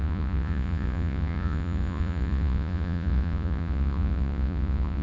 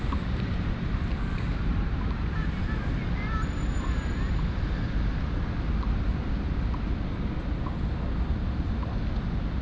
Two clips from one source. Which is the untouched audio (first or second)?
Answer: second